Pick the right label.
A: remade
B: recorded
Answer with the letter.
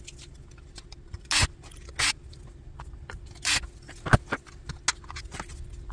B